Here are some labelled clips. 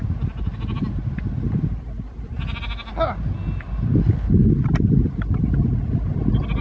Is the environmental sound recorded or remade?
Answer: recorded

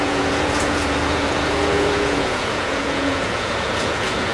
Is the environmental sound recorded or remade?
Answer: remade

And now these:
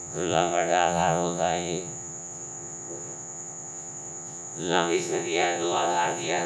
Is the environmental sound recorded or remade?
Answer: remade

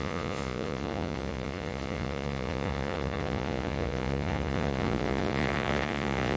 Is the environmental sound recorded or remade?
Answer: remade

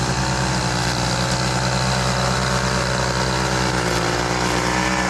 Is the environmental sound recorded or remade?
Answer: recorded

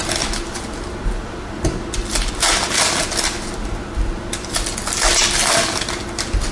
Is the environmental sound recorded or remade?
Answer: recorded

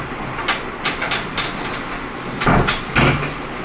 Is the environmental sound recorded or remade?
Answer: recorded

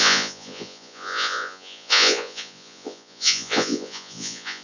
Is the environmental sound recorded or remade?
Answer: remade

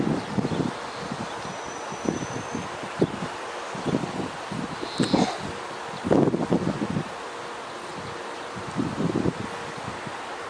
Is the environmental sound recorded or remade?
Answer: recorded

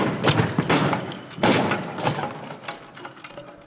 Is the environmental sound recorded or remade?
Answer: recorded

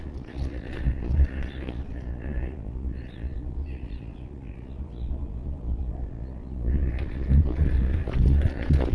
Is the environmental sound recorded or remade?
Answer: remade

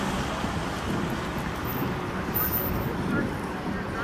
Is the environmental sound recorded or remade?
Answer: recorded